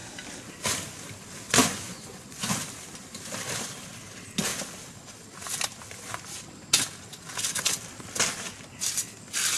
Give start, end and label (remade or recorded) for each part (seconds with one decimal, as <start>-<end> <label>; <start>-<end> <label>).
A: 0.0-1.6 recorded; 1.6-2.6 remade; 2.6-9.6 recorded